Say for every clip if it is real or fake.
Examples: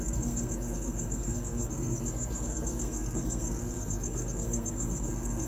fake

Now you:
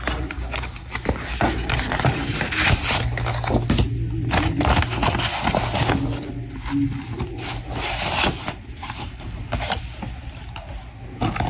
real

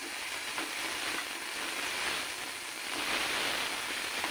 real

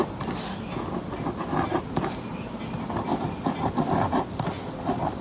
real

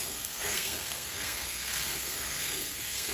fake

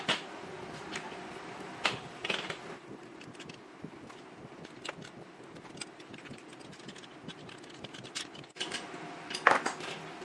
real